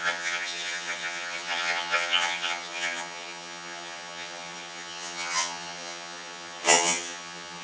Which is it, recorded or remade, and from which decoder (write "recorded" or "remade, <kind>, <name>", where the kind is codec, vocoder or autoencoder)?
remade, vocoder, HiFi-GAN